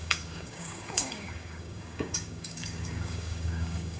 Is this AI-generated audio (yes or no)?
yes